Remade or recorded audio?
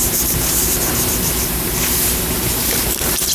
remade